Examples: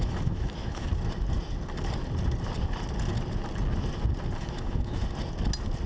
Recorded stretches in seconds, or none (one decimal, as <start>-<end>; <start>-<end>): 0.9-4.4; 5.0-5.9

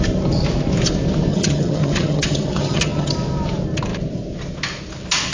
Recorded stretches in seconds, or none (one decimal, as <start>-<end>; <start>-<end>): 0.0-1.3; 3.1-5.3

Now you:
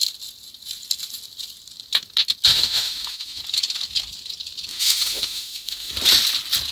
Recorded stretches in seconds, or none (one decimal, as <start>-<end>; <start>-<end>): 0.0-2.5; 3.4-4.7; 5.9-6.7